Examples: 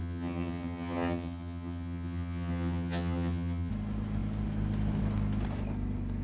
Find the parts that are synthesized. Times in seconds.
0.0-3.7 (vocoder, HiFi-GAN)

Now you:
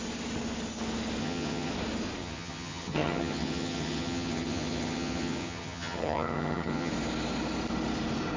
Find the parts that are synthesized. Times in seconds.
1.2-1.7 (vocoder, HiFi-GAN); 2.2-6.9

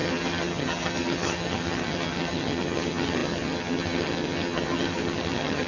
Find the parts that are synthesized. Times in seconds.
0.0-5.7 (vocoder, HiFi-GAN)

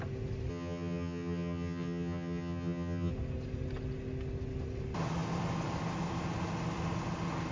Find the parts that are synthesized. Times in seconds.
0.5-3.1 (vocoder, HiFi-GAN)